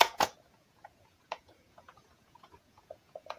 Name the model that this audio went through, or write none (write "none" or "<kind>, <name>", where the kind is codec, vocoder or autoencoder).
vocoder, Vocos